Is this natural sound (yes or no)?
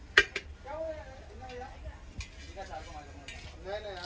yes